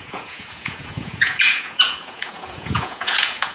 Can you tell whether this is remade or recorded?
remade